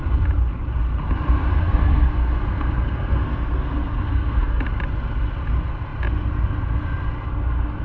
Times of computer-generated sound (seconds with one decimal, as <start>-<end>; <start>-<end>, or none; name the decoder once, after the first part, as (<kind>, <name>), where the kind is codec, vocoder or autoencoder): 1.6-4.6 (codec, SNAC)